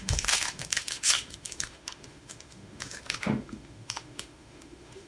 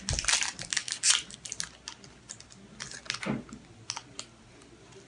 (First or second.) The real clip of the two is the second